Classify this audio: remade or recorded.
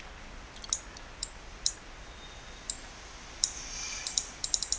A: recorded